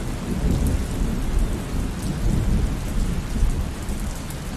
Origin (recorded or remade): recorded